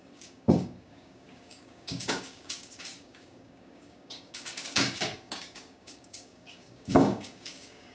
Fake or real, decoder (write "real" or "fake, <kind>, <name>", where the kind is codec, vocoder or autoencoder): fake, codec, DAC